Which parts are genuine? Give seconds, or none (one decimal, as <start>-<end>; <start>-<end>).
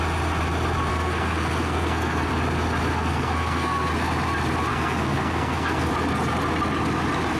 0.0-0.9; 2.3-2.9; 3.9-4.7; 5.9-7.4